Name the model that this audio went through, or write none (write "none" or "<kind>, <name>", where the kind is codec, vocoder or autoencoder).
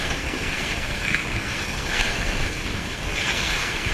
codec, SNAC